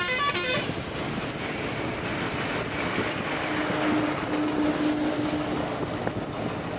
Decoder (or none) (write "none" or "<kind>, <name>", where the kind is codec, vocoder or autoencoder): none